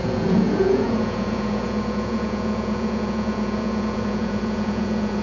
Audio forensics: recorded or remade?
remade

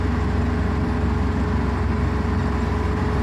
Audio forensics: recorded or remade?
recorded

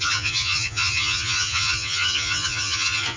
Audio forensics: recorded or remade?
remade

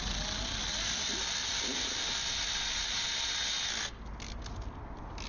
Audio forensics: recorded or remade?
recorded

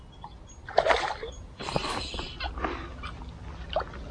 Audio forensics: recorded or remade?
recorded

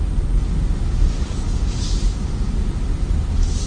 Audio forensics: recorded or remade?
recorded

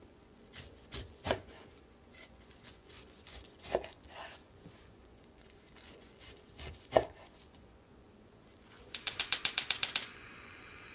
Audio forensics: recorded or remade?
remade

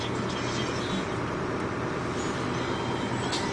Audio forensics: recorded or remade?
recorded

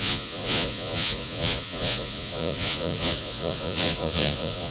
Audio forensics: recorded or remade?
remade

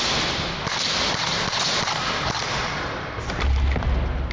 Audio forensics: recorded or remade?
recorded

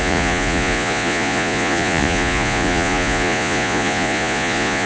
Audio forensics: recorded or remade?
remade